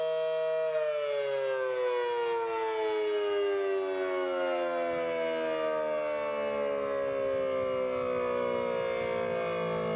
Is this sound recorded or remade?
recorded